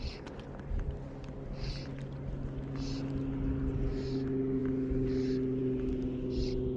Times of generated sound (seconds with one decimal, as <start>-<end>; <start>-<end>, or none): none